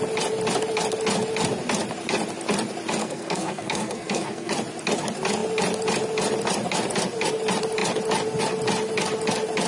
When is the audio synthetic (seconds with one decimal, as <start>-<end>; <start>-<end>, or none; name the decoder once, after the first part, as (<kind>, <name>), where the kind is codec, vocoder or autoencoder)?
3.0-4.5 (codec, SNAC)